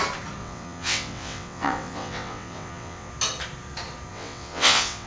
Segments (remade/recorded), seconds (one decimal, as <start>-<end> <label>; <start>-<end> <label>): 0.0-0.4 recorded; 0.4-3.1 remade; 3.1-4.1 recorded; 4.1-5.1 remade